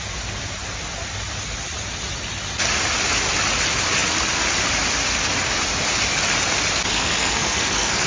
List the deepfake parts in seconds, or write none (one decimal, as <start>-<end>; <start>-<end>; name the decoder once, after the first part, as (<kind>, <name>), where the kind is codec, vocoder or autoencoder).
6.9-8.1 (codec, SNAC)